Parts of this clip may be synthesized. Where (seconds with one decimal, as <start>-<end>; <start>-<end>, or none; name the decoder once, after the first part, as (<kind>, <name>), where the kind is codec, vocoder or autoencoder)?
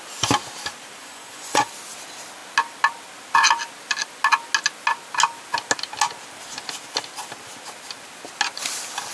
1.0-1.7 (vocoder, Vocos)